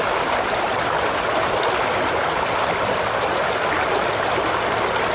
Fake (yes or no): no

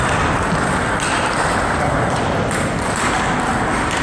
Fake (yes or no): no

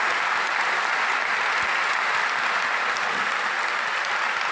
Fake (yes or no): no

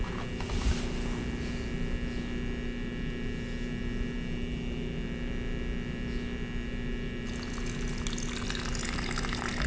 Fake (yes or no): no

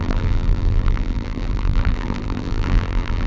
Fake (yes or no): yes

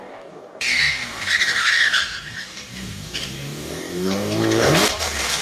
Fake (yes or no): yes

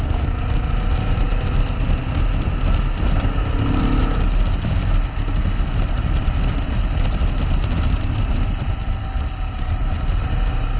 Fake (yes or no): no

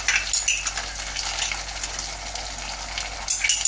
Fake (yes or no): no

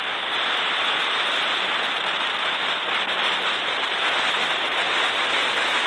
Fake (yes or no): no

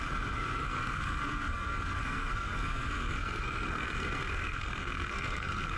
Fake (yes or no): yes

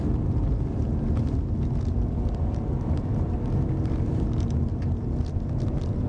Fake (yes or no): no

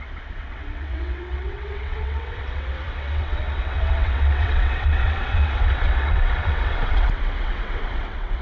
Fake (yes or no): yes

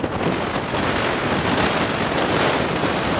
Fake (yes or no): no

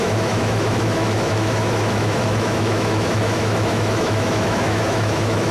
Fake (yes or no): yes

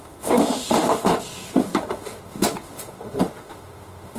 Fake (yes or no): yes